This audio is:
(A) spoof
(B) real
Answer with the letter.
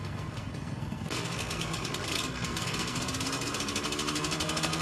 A